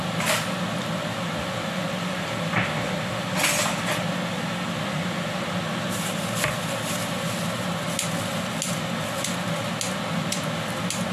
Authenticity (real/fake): real